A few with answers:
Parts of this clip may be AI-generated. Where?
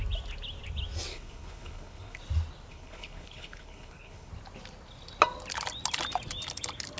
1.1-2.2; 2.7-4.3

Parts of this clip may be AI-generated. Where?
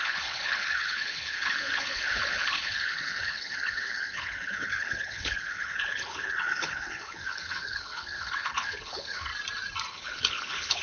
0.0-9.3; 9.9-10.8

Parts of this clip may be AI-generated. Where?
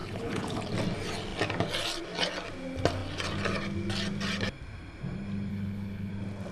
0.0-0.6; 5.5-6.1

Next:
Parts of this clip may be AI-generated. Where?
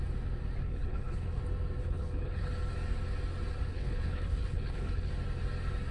0.6-1.4; 1.8-2.5; 3.7-5.1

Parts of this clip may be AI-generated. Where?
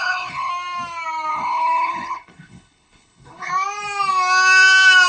0.0-0.5; 1.3-3.5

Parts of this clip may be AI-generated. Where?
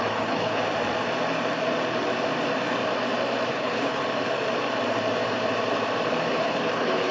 0.0-0.6; 3.5-4.0; 6.3-7.1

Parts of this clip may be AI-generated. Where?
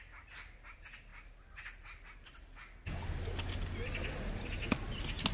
none